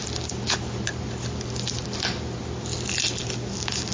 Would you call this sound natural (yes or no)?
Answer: yes